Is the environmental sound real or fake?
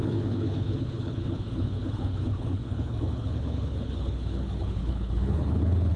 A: fake